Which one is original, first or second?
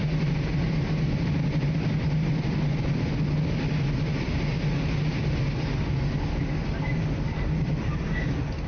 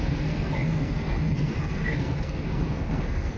first